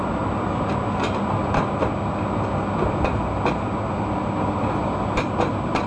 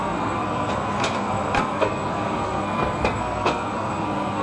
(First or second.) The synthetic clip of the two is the second